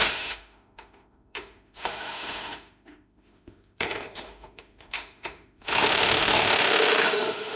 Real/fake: fake